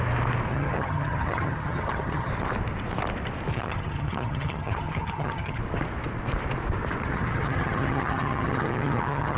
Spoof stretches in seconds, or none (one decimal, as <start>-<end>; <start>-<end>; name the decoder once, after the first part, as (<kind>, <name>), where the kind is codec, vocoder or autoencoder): 0.5-2.3 (vocoder, HiFi-GAN); 3.5-5.6; 7.0-9.4